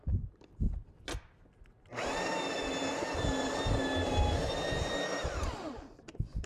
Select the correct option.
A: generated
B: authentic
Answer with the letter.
B